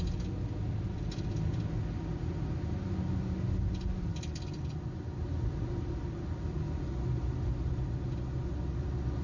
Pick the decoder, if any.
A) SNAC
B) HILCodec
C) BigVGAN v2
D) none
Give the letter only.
D